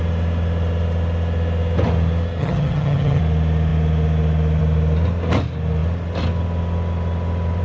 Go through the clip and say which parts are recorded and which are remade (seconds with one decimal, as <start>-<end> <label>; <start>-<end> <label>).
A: 0.0-2.4 recorded; 2.4-3.2 remade; 3.2-7.6 recorded